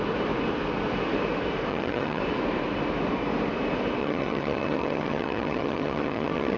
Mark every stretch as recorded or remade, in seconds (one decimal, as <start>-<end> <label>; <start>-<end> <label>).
0.0-1.7 recorded; 1.7-2.2 remade; 2.2-4.0 recorded; 4.0-6.6 remade